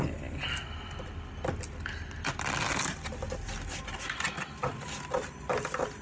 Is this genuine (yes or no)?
yes